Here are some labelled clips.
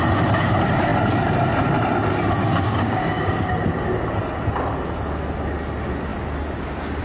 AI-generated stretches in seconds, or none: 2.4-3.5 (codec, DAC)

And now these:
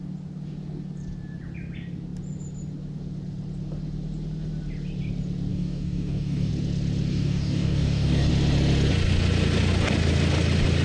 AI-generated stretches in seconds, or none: 5.5-6.5 (codec, DAC); 7.1-8.3

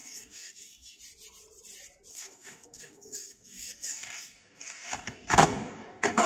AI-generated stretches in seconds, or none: 0.0-1.0 (codec, DAC); 2.1-6.3

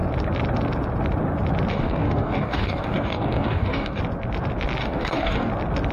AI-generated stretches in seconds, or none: 1.7-4.0 (codec, DAC); 4.8-5.5

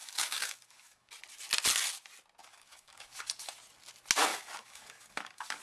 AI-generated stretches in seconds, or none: 0.0-1.1 (codec, DAC); 2.4-3.5; 4.3-5.6

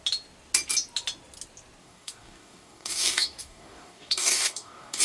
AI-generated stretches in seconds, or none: 1.8-5.0 (codec, DAC)

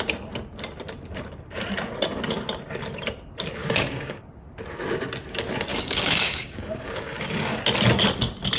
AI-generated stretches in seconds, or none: 3.6-4.2 (codec, DAC); 5.7-7.6

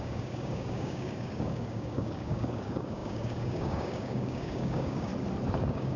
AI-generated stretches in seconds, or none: 0.0-5.1 (codec, DAC); 5.6-6.0